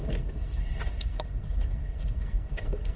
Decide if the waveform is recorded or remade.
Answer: remade